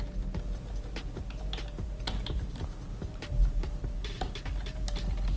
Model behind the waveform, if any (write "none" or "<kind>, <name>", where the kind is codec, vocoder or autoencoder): none